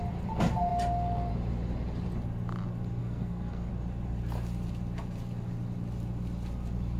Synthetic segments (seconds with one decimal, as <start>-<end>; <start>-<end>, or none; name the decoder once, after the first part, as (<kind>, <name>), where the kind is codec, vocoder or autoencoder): 3.0-3.7 (codec, SNAC)